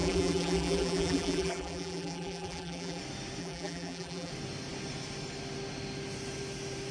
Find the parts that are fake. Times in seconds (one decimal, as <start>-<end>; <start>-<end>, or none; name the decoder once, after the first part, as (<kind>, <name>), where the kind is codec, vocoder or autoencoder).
0.0-3.0 (vocoder, BigVGAN v2); 3.4-4.3